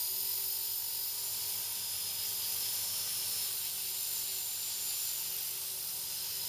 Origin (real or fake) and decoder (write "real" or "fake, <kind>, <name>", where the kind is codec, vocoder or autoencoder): real